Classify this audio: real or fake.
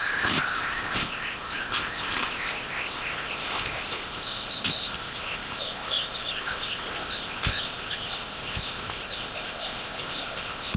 fake